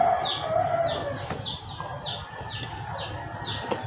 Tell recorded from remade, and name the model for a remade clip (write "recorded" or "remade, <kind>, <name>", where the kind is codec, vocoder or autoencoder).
recorded